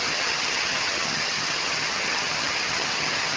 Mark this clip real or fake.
fake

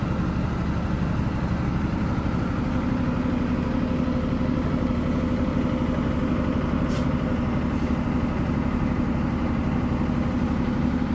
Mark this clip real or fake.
real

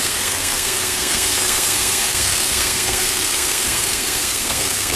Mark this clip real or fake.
fake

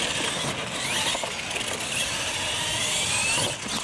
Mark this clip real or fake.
real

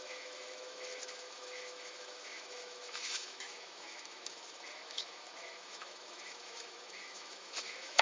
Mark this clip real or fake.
fake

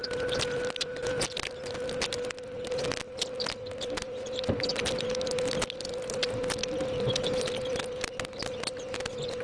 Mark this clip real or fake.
real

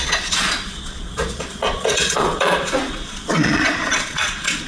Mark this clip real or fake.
fake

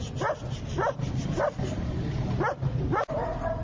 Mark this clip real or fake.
fake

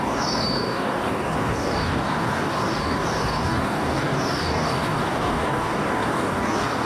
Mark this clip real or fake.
fake